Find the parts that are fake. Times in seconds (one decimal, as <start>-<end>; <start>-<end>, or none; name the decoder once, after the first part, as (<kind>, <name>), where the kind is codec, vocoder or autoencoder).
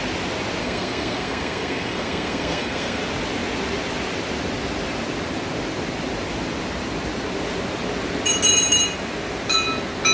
0.6-3.0 (codec, SNAC)